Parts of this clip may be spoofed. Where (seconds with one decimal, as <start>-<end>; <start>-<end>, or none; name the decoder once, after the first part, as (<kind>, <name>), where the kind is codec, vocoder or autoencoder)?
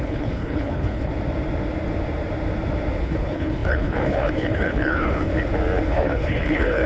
0.0-1.1 (codec, HILCodec); 3.0-5.3; 5.9-6.9